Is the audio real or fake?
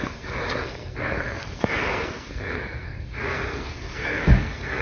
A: fake